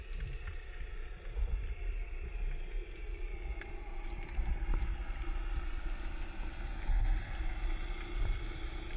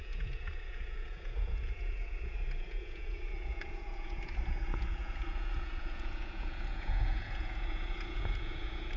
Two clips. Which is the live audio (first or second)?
first